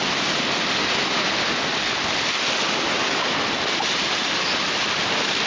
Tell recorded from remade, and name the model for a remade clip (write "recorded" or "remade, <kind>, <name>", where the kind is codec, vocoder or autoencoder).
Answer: recorded